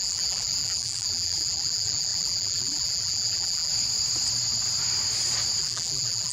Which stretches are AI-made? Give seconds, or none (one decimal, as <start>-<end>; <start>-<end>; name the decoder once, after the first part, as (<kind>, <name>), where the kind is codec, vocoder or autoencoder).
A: 0.0-3.7 (vocoder, BigVGAN v2); 5.6-6.3